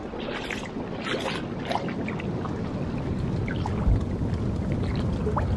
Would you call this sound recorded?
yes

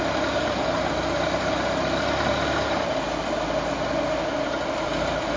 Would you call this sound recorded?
yes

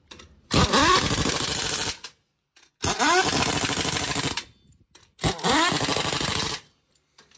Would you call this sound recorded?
yes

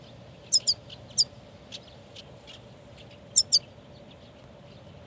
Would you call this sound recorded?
yes